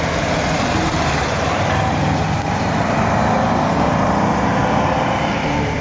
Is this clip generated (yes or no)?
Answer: yes